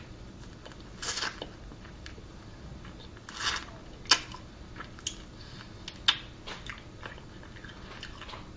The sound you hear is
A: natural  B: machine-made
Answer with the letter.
A